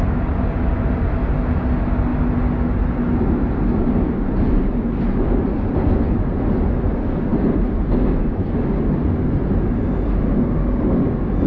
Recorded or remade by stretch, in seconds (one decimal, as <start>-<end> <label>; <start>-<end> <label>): 0.0-11.5 recorded